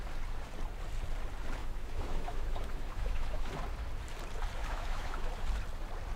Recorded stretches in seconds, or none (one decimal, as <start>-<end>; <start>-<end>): 0.0-1.6; 3.5-4.6; 5.3-6.2